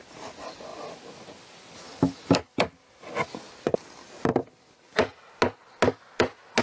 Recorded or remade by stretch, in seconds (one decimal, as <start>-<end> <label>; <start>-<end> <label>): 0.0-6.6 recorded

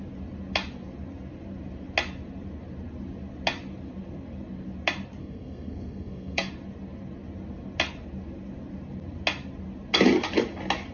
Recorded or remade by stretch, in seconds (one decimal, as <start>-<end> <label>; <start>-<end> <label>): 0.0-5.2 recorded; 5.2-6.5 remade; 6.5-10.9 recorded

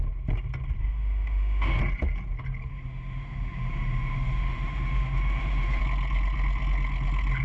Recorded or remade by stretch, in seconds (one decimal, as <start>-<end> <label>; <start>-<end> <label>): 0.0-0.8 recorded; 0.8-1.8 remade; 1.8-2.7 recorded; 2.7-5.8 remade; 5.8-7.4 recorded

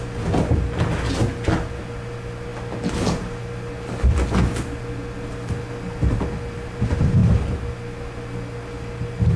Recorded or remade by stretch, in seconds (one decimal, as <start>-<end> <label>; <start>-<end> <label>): 0.0-9.4 recorded

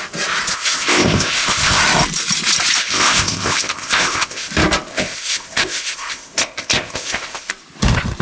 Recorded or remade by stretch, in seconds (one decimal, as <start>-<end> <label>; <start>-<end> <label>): 0.0-0.5 recorded; 0.5-1.8 remade; 1.8-2.8 recorded; 2.8-4.5 remade; 4.5-4.9 recorded; 4.9-7.5 remade; 7.5-8.2 recorded

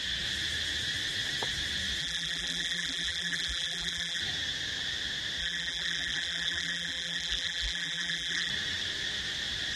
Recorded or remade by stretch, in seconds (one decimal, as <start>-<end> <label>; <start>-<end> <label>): 0.0-2.0 recorded; 2.0-4.2 remade; 4.2-5.4 recorded; 5.4-8.5 remade; 8.5-9.8 recorded

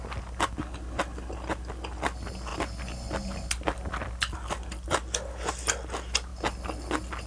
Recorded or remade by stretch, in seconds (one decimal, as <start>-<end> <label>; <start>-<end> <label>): 0.0-7.3 recorded